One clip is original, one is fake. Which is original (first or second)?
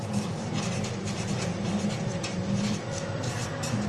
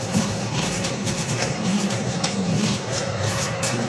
first